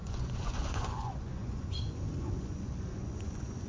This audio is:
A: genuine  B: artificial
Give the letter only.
B